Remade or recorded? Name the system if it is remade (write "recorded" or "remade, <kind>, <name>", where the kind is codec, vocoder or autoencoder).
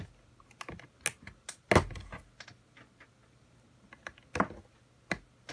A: recorded